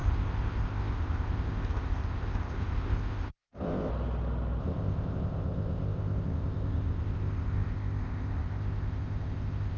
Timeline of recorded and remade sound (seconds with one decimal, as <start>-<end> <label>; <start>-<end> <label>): 0.0-3.9 remade; 3.9-4.6 recorded; 4.6-9.8 remade